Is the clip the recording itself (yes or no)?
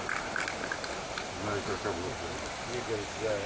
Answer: yes